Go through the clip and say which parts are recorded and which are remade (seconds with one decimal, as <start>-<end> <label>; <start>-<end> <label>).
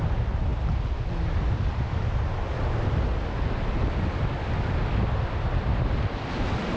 0.0-6.8 recorded